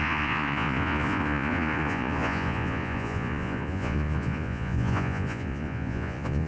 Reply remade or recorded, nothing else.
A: remade